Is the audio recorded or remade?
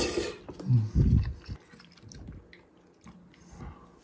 recorded